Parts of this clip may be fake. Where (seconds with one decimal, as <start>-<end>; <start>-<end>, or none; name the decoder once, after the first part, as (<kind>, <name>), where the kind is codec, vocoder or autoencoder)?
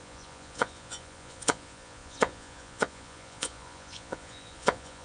0.0-5.0 (vocoder, Vocos)